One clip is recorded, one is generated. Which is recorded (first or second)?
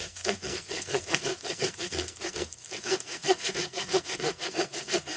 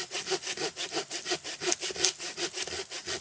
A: second